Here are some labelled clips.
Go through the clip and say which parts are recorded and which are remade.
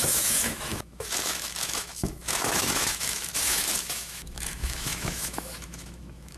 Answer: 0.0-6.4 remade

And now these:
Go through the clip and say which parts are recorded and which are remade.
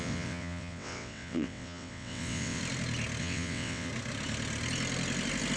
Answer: 0.0-2.6 remade; 2.6-3.2 recorded; 3.2-3.9 remade; 3.9-5.6 recorded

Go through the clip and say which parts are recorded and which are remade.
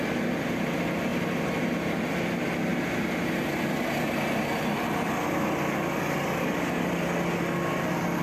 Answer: 0.0-8.2 recorded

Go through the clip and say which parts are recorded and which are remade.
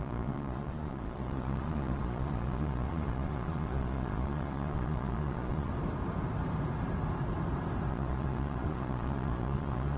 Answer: 0.0-5.7 remade; 5.7-7.9 recorded; 7.9-10.0 remade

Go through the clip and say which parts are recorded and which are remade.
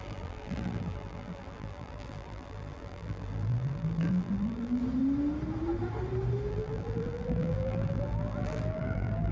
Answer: 0.0-4.8 remade; 4.8-6.5 recorded; 6.5-9.3 remade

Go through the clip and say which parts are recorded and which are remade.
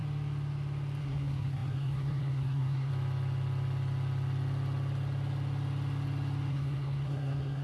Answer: 0.0-1.0 recorded; 1.0-2.9 remade; 2.9-6.5 recorded; 6.5-7.6 remade